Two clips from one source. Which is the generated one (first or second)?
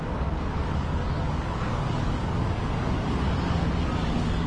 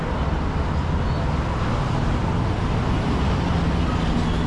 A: first